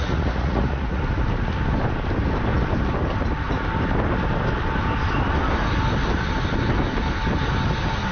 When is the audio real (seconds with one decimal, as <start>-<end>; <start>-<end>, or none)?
1.0-8.1